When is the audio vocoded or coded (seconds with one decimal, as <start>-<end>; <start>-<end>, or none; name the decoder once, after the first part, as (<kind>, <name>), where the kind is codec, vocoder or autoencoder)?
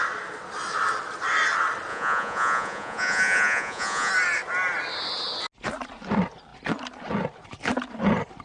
1.9-4.1 (vocoder, Vocos)